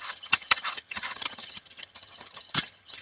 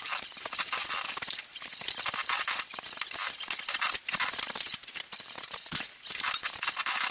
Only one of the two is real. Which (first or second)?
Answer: second